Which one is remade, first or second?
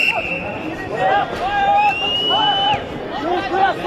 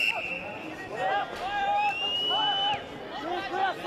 first